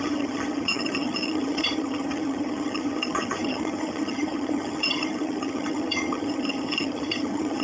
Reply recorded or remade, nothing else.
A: remade